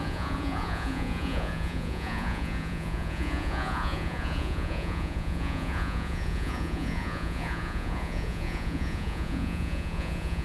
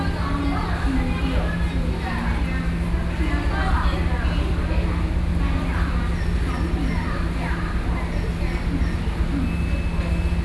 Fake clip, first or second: first